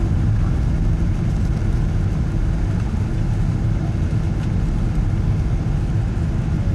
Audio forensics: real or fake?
real